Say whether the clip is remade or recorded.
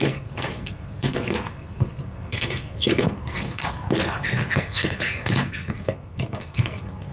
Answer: remade